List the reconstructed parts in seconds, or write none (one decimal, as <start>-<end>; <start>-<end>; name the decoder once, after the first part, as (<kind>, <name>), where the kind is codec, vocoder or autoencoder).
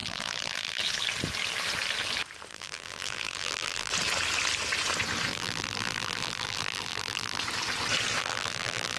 0.0-0.8 (vocoder, BigVGAN v2); 2.5-3.9; 5.3-7.4; 8.2-9.0